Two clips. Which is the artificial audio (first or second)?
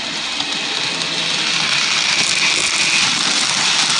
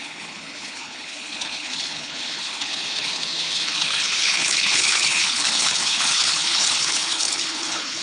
second